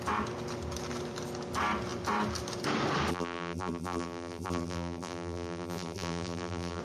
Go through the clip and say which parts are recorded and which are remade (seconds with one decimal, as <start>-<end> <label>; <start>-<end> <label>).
0.0-3.1 recorded; 3.1-6.8 remade